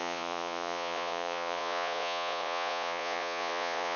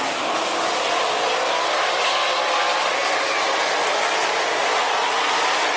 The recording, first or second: second